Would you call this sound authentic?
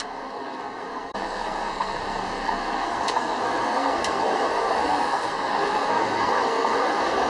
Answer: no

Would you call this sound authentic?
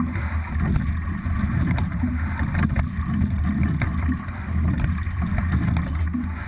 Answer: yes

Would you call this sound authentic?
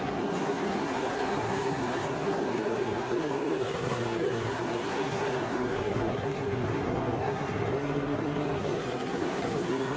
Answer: no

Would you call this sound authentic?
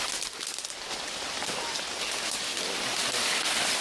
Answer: yes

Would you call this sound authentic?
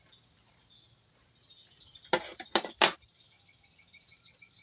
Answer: yes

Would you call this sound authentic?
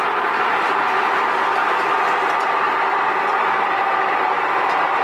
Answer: yes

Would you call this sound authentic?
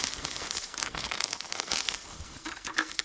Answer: no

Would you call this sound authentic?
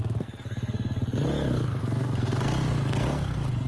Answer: no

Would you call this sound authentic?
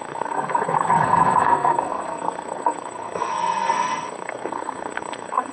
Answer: no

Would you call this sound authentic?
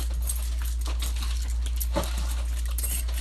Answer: yes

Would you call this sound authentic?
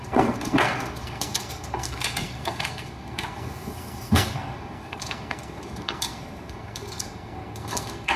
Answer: no